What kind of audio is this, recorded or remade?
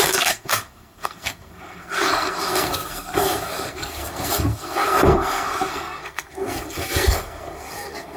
remade